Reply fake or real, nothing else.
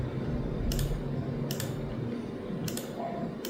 real